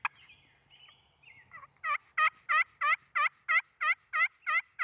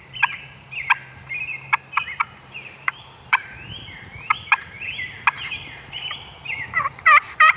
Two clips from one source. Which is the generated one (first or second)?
second